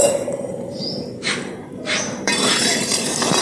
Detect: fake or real fake